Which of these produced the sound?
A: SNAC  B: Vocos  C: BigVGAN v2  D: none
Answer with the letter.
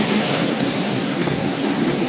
A